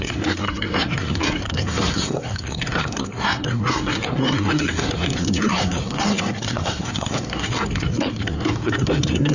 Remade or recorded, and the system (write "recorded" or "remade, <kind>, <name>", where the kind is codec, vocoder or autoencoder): remade, codec, SNAC